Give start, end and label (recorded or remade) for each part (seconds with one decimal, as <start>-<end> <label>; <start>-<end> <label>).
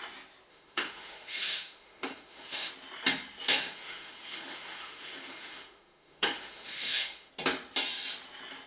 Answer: 0.0-0.5 recorded; 0.5-2.7 remade; 2.7-3.5 recorded; 3.5-7.3 remade; 7.3-8.7 recorded